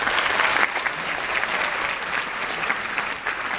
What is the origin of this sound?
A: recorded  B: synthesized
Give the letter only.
A